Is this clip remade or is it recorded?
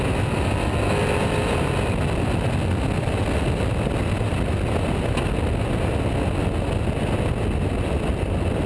recorded